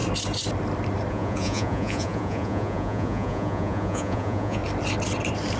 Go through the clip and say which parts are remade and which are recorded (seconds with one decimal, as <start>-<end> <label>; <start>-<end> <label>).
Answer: 0.0-1.1 recorded; 1.1-4.6 remade; 4.6-5.6 recorded